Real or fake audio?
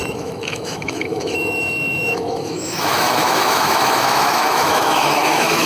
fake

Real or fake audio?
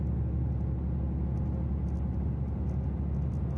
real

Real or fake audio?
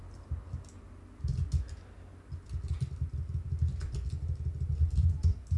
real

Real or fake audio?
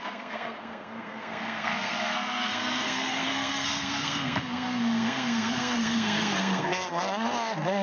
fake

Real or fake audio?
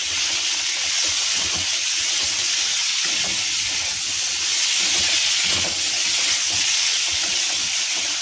fake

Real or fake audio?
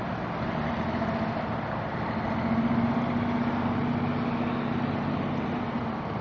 real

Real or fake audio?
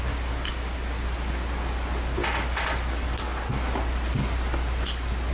real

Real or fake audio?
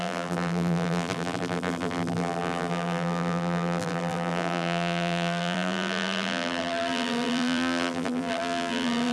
fake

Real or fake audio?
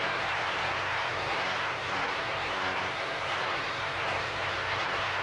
fake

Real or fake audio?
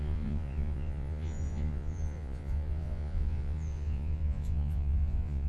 fake